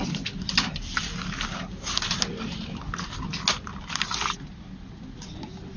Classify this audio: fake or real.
real